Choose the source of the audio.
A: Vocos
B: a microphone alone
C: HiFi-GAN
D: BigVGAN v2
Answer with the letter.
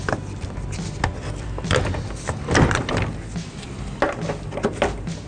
B